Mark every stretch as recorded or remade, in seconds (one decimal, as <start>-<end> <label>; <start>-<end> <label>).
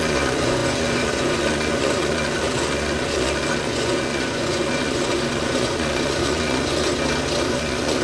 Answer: 0.0-6.9 remade; 6.9-7.5 recorded; 7.5-8.0 remade